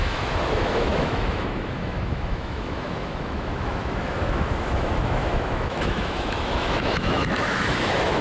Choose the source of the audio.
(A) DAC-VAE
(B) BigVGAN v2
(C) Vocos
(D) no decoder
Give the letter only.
A